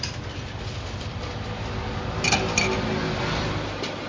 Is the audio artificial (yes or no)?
no